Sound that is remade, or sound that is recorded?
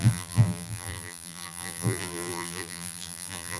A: remade